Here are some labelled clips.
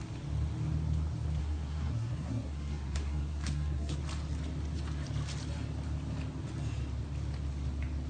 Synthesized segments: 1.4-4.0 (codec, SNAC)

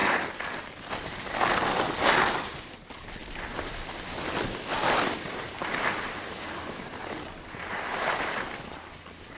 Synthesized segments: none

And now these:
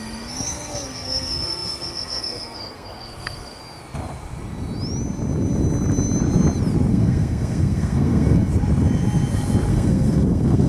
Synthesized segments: 0.0-3.6 (codec, SNAC); 6.9-8.5; 9.7-10.7

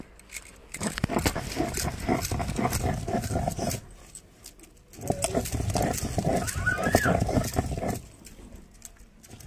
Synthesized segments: 0.6-1.1 (autoencoder, DAC-VAE)

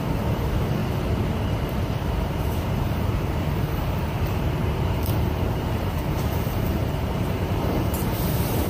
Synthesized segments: 0.0-0.8 (vocoder, BigVGAN v2); 1.8-8.7

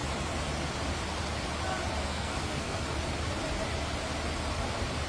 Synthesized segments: 2.1-2.8 (codec, SNAC)

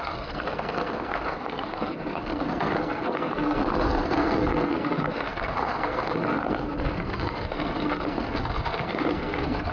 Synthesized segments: 0.0-9.7 (codec, SNAC)

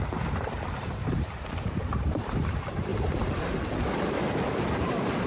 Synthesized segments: 0.0-5.3 (vocoder, BigVGAN v2)